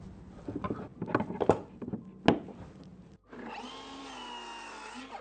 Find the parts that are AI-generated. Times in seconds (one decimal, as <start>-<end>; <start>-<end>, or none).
none